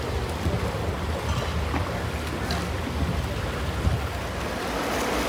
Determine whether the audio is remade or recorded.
recorded